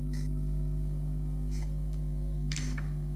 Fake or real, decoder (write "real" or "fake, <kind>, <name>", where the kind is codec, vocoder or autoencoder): fake, codec, SNAC